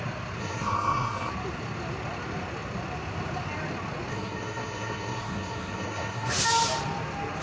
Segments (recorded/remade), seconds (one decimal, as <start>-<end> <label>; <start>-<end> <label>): 0.0-0.4 recorded; 0.4-1.3 remade; 1.3-4.1 recorded; 4.1-6.3 remade; 6.3-7.4 recorded